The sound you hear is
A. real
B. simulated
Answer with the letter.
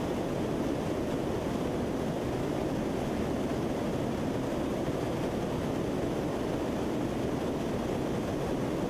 A